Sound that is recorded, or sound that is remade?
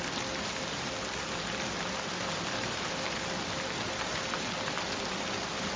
recorded